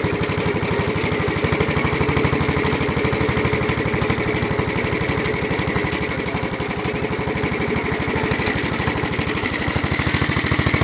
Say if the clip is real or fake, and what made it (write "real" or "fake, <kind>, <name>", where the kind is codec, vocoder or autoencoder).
real